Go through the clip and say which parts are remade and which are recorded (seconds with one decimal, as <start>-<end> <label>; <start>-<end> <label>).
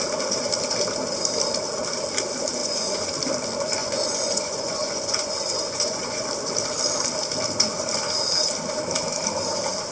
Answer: 0.0-2.6 recorded; 2.6-3.1 remade; 3.1-3.8 recorded; 3.8-6.2 remade; 6.2-9.9 recorded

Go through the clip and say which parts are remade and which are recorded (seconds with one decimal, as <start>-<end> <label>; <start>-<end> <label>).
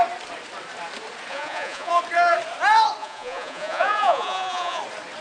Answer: 0.0-1.3 recorded; 1.3-1.9 remade; 1.9-3.0 recorded; 3.0-4.8 remade; 4.8-5.2 recorded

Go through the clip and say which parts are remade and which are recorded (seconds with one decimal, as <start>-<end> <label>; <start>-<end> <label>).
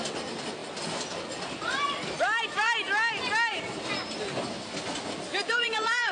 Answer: 0.0-5.3 recorded; 5.3-6.1 remade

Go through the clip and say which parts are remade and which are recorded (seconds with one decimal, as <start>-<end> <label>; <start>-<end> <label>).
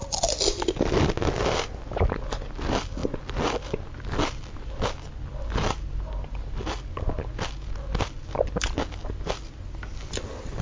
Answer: 0.0-10.6 recorded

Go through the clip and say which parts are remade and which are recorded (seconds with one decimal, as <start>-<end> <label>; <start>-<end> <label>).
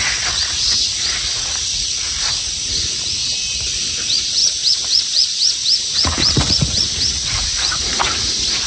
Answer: 0.0-3.2 remade; 3.2-3.9 recorded; 3.9-8.7 remade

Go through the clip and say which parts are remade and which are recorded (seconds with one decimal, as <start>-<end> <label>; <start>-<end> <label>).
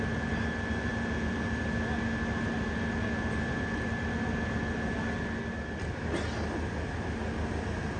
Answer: 0.0-8.0 recorded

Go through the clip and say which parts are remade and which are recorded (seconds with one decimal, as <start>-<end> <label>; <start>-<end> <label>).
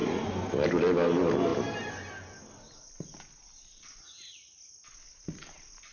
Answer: 0.0-5.9 recorded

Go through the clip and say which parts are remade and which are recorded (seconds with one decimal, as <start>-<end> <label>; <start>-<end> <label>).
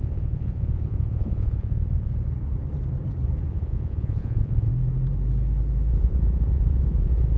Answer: 0.0-2.1 remade; 2.1-3.5 recorded; 3.5-4.7 remade; 4.7-5.9 recorded; 5.9-7.4 remade